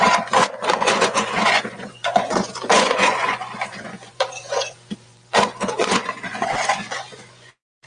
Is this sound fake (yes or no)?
yes